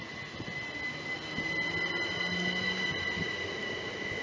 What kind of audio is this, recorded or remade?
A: recorded